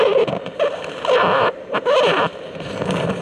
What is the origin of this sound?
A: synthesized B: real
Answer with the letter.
A